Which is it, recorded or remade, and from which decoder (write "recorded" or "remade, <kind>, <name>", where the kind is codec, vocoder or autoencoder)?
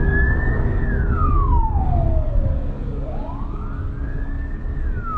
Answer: remade, codec, DAC